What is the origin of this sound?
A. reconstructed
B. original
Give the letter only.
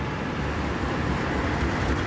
A